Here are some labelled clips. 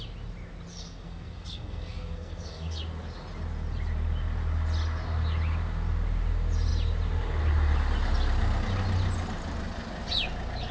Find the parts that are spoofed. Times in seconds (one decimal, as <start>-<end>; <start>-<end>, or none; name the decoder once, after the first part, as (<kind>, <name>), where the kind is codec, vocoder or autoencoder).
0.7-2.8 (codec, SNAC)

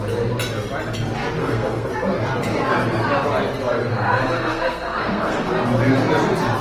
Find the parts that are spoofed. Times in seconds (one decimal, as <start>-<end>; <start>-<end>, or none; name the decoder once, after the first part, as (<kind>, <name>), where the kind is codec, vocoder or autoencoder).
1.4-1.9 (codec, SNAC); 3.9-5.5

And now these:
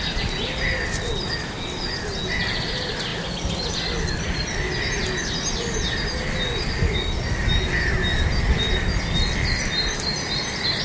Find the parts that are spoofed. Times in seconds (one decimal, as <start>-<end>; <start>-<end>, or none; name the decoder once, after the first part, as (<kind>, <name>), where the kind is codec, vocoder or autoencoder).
none